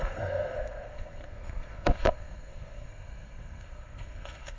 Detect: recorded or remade remade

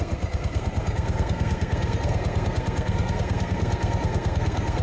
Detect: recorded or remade remade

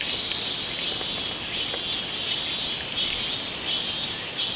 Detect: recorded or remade recorded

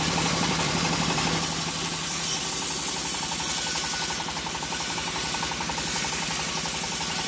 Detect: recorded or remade remade